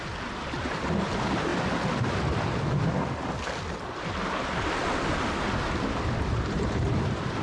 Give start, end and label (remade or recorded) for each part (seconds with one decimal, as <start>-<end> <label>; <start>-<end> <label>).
0.0-1.5 remade; 1.5-3.7 recorded; 3.7-4.8 remade; 4.8-6.4 recorded; 6.4-7.4 remade